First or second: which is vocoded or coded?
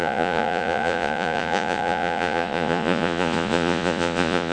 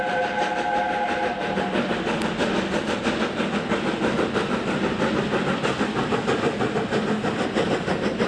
first